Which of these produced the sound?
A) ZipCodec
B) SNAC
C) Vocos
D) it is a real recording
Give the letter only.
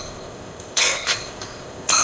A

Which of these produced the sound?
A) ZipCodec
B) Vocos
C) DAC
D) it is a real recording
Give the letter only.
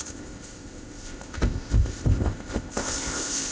A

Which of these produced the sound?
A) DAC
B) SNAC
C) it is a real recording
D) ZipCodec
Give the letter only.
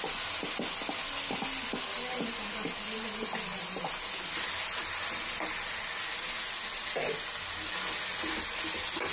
C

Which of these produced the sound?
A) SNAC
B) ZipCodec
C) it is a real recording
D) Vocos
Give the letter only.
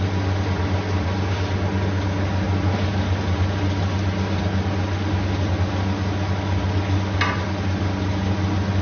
C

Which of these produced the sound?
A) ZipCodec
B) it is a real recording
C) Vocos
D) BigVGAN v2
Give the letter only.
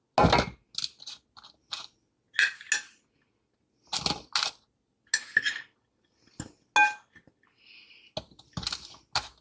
B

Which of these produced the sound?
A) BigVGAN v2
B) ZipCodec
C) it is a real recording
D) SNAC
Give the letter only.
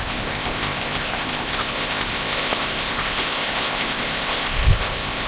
B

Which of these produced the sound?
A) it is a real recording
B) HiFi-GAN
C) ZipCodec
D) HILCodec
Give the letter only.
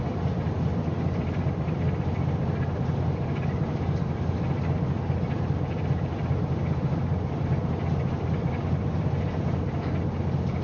A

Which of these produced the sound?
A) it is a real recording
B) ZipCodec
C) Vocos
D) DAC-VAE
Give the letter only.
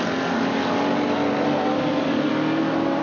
A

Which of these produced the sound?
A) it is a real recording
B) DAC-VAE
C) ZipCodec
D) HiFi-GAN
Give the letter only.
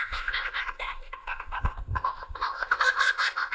C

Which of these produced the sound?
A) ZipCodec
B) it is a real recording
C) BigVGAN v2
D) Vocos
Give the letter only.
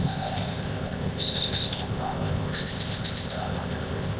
A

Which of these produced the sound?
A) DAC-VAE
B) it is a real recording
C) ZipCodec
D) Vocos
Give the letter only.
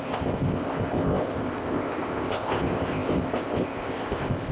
C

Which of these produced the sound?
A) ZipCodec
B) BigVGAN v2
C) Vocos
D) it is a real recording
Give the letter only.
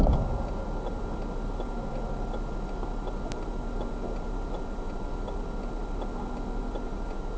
D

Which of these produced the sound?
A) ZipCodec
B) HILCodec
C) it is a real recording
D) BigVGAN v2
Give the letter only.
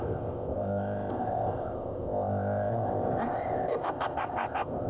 A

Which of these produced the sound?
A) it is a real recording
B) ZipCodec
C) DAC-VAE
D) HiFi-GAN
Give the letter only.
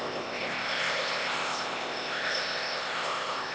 B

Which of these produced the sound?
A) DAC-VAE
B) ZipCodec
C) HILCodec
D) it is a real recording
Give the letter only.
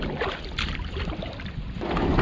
D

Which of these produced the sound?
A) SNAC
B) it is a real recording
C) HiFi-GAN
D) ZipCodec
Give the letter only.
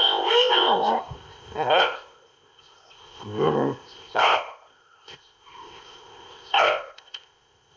D